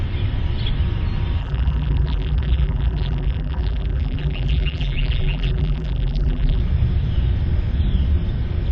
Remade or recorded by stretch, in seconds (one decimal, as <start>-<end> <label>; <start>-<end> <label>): 0.0-1.4 recorded; 1.4-6.6 remade; 6.6-8.7 recorded